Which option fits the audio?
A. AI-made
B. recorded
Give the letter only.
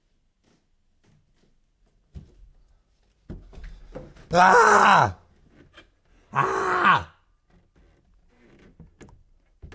B